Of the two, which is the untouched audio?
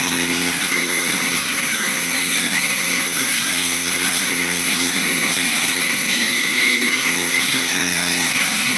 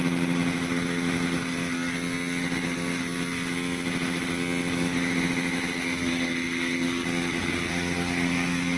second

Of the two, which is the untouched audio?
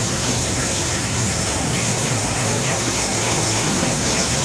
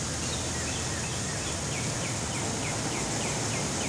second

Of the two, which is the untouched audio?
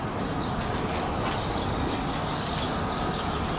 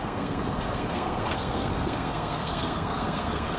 first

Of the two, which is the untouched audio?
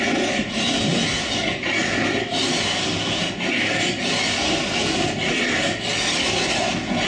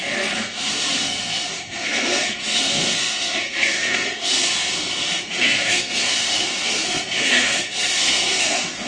first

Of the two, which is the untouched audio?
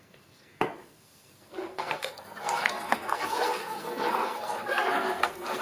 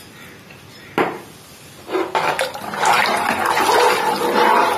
second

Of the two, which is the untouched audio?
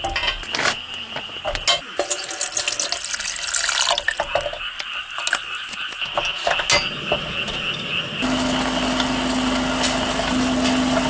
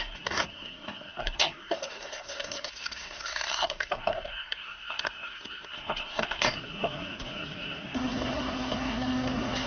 first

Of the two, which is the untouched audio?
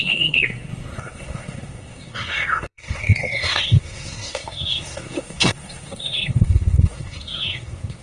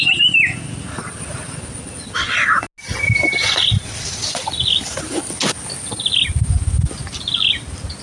second